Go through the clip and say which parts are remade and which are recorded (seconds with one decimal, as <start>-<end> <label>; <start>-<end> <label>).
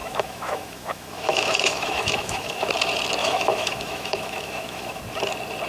0.0-2.7 remade; 2.7-3.2 recorded; 3.2-5.0 remade; 5.0-5.7 recorded